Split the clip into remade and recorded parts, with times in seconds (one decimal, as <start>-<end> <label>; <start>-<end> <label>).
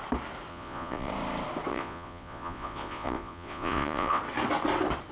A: 0.0-0.5 recorded; 0.5-1.1 remade; 1.1-1.7 recorded; 1.7-4.2 remade; 4.2-5.1 recorded